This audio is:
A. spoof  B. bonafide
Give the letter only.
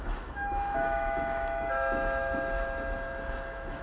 A